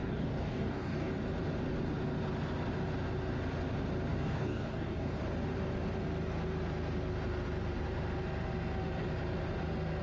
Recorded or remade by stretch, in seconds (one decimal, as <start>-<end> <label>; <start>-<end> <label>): 0.0-1.1 remade; 1.1-4.1 recorded; 4.1-5.2 remade; 5.2-10.0 recorded